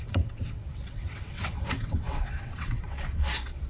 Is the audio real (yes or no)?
no